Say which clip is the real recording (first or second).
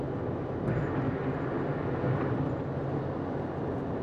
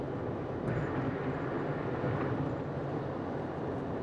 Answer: first